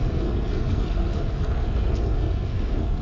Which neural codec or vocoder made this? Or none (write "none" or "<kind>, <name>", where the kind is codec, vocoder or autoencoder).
codec, SNAC